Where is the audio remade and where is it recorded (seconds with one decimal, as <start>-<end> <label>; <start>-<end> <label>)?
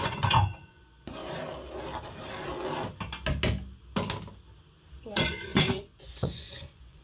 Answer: 0.0-1.5 remade; 1.5-5.0 recorded; 5.0-7.0 remade